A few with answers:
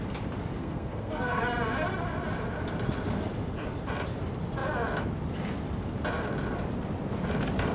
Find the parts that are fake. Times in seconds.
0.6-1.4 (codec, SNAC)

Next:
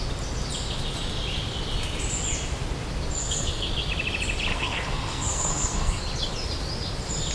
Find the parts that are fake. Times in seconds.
3.2-3.7 (codec, SNAC); 4.5-6.0

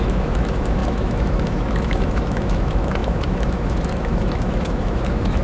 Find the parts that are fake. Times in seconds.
0.0-5.4 (autoencoder, DAC-VAE)

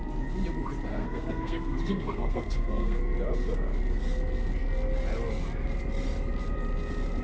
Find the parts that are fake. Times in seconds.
0.9-3.0 (codec, SNAC)

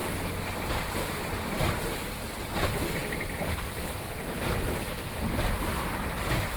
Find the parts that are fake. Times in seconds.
1.2-6.6 (vocoder, BigVGAN v2)

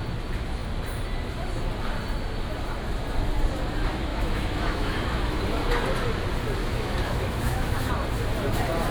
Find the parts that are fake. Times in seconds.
4.1-5.4 (autoencoder, DAC-VAE); 6.6-7.9

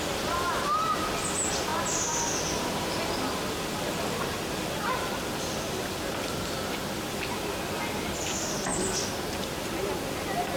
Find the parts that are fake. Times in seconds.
none